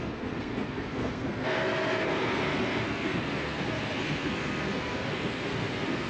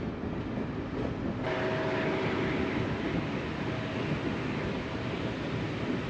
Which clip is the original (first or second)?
second